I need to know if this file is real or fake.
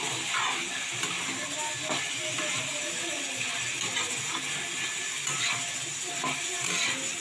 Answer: real